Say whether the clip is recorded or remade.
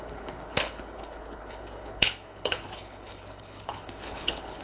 remade